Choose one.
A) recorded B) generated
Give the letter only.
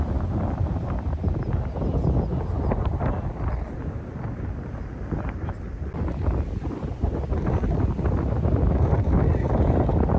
A